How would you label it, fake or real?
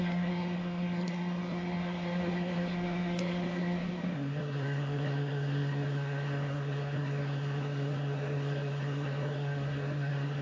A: fake